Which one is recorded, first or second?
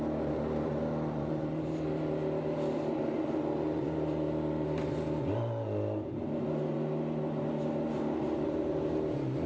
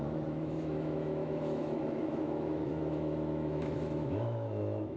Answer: first